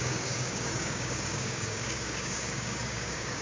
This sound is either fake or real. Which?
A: fake